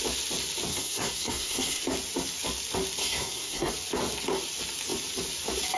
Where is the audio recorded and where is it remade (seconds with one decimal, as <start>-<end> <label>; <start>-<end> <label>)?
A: 0.0-0.7 recorded; 0.7-1.8 remade; 1.8-3.0 recorded; 3.0-3.7 remade; 3.7-5.8 recorded